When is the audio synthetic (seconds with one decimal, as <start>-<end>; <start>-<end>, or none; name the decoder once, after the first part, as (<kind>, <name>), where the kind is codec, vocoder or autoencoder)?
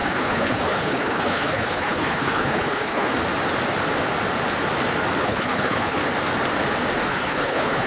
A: 0.0-3.1 (codec, HILCodec); 5.2-6.0; 7.1-7.9